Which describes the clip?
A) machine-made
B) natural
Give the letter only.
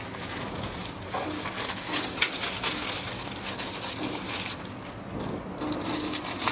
B